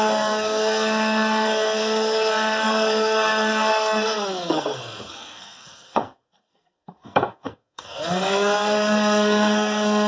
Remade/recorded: remade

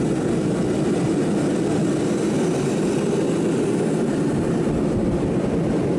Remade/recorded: recorded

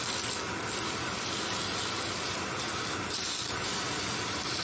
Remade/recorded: recorded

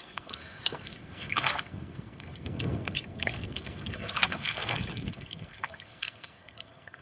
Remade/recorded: remade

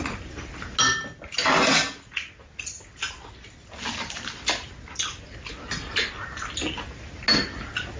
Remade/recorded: recorded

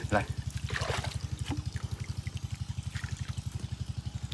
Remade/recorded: recorded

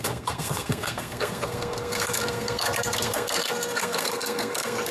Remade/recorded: remade